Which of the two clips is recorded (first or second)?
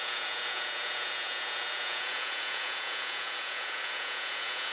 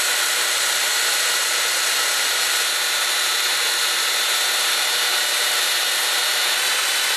second